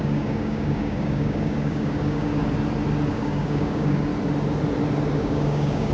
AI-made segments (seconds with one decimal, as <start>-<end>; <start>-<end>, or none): 0.0-2.4; 3.1-4.1; 5.2-5.9